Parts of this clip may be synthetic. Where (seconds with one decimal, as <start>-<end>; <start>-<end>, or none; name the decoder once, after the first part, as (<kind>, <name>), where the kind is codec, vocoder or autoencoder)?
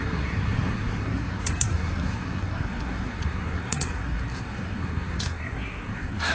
0.0-6.3 (codec, SNAC)